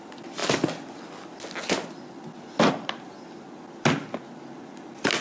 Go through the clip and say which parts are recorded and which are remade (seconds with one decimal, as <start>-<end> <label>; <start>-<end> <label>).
0.0-5.2 recorded